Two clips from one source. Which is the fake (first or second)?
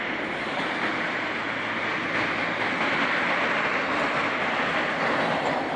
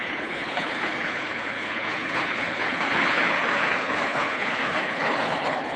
second